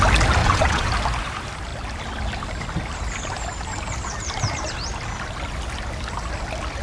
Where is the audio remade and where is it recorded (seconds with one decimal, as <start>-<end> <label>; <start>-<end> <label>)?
0.0-0.4 recorded; 0.4-0.9 remade; 0.9-6.8 recorded